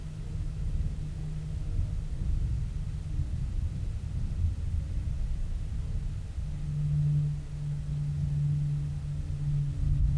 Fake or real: real